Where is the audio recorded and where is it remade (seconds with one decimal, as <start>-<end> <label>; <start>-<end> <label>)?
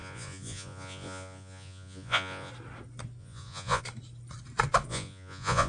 0.0-2.5 remade; 2.5-3.2 recorded; 3.2-3.8 remade; 3.8-4.9 recorded; 4.9-5.7 remade